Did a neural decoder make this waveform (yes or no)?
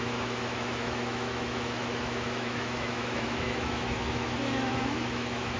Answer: yes